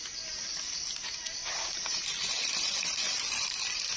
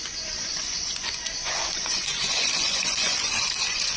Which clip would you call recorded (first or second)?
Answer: first